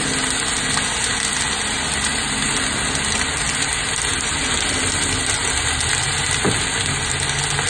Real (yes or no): yes